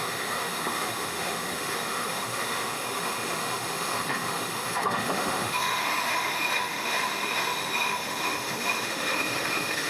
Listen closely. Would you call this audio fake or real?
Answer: fake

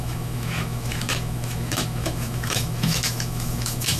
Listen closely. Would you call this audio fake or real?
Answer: fake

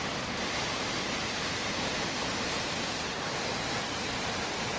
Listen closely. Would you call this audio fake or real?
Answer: real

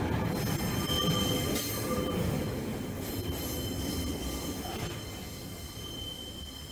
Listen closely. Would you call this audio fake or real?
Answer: real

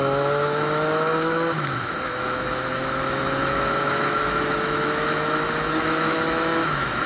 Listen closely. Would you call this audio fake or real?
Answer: fake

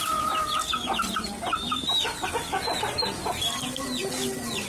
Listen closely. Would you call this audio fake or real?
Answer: real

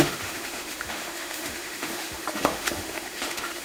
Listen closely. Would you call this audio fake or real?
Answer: fake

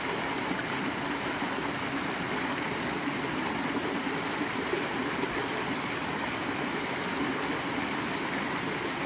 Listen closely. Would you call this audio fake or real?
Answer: real